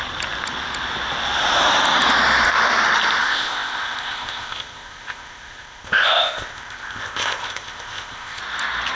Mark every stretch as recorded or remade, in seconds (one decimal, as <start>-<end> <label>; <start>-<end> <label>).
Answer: 0.0-3.2 recorded; 3.2-8.4 remade; 8.4-8.9 recorded